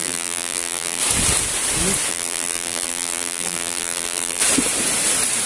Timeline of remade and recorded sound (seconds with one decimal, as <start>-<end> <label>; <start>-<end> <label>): 0.0-1.0 remade; 1.0-2.1 recorded; 2.1-4.4 remade; 4.4-5.5 recorded